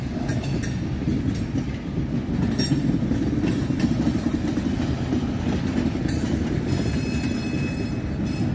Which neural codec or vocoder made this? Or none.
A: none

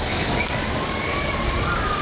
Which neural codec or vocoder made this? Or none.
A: codec, DAC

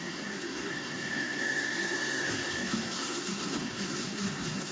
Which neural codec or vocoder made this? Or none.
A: codec, SNAC